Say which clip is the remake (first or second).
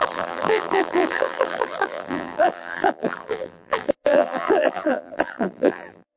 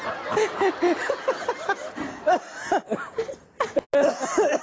first